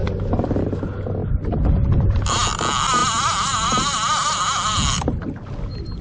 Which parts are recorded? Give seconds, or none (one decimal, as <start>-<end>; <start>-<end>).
0.0-6.0